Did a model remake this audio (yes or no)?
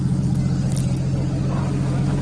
no